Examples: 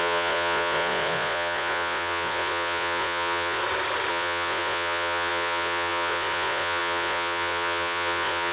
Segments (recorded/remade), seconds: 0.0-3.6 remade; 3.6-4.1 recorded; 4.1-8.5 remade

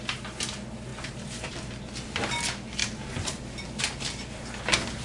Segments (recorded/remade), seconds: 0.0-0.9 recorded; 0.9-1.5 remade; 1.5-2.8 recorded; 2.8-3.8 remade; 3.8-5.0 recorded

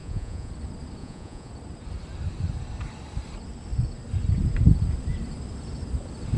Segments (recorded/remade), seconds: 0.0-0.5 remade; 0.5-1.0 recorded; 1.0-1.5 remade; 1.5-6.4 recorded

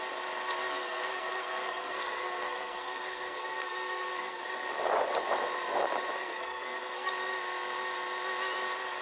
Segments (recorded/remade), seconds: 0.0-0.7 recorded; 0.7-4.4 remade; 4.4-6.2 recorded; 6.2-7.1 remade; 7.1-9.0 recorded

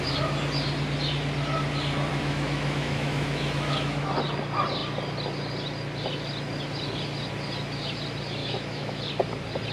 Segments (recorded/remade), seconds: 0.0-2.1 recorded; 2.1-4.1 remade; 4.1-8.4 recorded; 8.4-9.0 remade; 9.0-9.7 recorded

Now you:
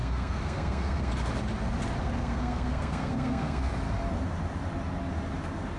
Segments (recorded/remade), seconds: 0.0-1.1 remade; 1.1-2.0 recorded; 2.0-3.7 remade; 3.7-5.8 recorded

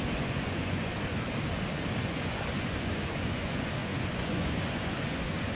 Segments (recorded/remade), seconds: 0.0-0.9 remade; 0.9-2.0 recorded; 2.0-5.6 remade

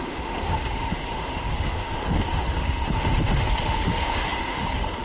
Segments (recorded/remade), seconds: 0.0-5.0 remade